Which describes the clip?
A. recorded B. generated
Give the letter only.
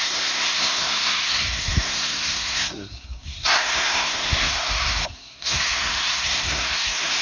B